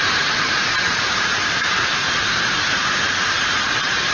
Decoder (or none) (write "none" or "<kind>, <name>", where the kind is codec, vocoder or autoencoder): vocoder, BigVGAN v2